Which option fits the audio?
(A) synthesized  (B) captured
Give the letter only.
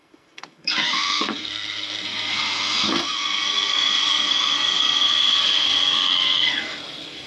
A